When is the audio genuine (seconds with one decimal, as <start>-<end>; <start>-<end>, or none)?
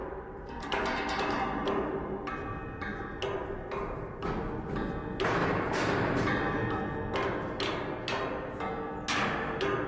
3.2-5.4; 6.8-9.9